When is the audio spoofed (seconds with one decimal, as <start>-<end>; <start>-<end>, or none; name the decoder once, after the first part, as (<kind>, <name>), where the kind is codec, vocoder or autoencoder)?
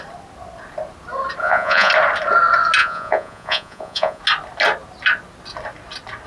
1.4-1.9 (vocoder, Vocos); 2.8-4.2